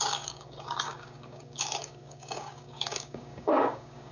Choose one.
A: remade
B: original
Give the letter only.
A